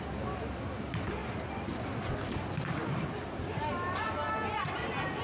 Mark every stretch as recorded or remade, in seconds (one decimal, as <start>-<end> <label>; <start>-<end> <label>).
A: 0.0-5.2 recorded